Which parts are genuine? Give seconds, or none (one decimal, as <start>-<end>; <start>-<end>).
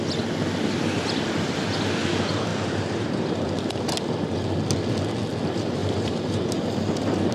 0.0-2.5; 3.5-5.8; 6.6-7.3